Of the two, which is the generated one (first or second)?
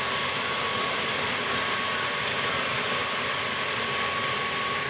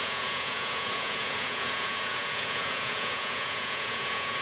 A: second